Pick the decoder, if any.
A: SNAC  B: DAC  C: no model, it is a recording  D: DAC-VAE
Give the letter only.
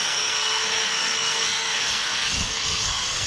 A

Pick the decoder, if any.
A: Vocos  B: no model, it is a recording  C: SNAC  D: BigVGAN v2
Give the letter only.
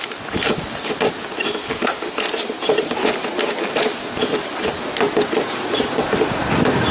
B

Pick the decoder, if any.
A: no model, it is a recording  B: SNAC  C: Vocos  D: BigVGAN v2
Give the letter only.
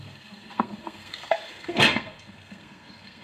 B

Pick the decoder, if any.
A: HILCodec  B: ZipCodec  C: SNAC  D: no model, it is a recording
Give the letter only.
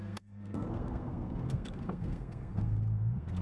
C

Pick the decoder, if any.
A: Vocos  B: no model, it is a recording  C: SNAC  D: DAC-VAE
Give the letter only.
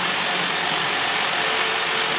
B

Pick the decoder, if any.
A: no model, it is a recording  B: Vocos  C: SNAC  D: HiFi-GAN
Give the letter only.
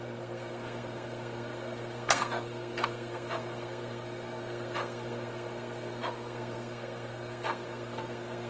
C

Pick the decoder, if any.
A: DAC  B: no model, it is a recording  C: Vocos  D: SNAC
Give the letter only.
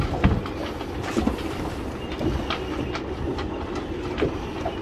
B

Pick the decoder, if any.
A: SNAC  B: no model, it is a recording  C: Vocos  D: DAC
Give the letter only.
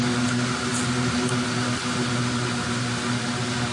B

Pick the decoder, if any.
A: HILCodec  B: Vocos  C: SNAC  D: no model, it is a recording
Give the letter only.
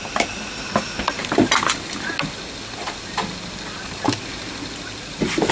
D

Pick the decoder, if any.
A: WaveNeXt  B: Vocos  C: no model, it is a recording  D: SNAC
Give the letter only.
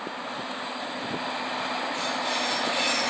C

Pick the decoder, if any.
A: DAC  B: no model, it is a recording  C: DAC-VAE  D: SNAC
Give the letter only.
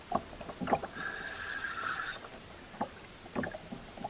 B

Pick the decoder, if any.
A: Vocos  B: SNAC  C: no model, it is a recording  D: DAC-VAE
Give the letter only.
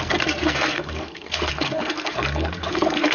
B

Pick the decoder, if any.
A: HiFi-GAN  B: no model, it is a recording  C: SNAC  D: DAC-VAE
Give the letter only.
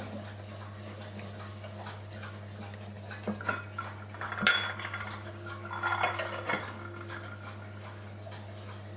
B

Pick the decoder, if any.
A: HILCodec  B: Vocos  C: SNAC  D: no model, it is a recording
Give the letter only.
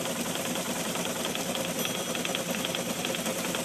D